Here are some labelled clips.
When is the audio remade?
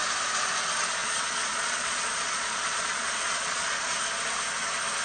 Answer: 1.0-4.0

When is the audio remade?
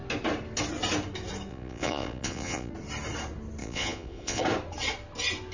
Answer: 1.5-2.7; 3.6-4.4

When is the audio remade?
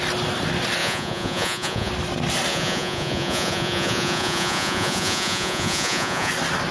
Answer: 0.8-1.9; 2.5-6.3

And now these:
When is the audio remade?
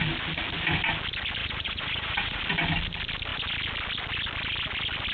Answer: 1.4-2.4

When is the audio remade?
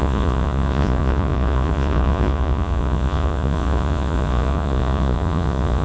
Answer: 0.0-5.8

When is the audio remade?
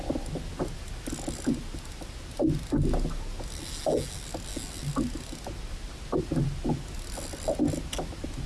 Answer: none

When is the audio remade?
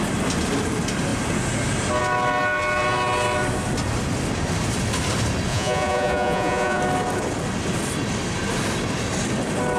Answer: 5.5-6.8